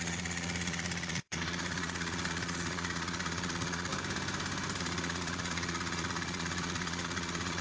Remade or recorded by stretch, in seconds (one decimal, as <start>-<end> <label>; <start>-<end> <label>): 0.0-3.9 remade; 3.9-4.8 recorded; 4.8-7.6 remade